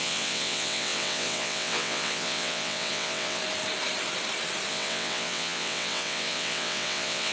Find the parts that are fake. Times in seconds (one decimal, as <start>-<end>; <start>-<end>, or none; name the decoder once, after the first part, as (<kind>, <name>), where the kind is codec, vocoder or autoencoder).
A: 0.0-3.4 (vocoder, WaveNeXt); 4.7-7.3